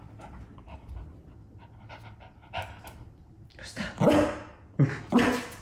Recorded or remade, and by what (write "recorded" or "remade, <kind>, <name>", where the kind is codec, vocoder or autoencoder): recorded